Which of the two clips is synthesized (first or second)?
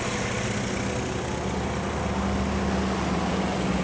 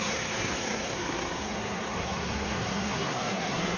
second